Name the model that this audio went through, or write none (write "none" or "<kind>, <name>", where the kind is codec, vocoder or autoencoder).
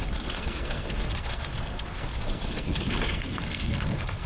codec, SNAC